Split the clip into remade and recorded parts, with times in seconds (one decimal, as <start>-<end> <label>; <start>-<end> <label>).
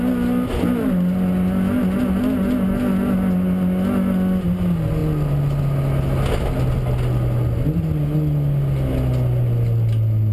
0.0-10.3 recorded